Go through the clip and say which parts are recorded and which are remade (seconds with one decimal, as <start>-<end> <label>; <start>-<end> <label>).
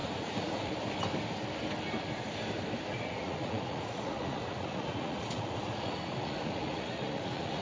0.0-0.7 remade; 0.7-2.9 recorded; 2.9-7.6 remade